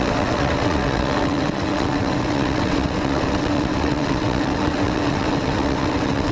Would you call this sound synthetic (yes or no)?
yes